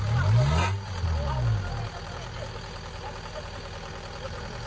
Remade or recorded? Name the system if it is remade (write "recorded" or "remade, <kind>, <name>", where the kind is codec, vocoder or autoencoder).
recorded